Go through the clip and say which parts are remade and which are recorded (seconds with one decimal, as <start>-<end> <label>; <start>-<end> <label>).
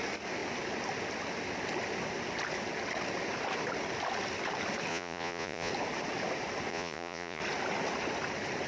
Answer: 0.0-4.9 recorded; 4.9-5.7 remade; 5.7-6.7 recorded; 6.7-7.4 remade; 7.4-8.7 recorded